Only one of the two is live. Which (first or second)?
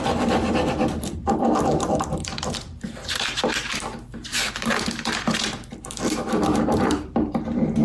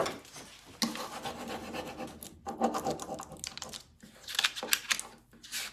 second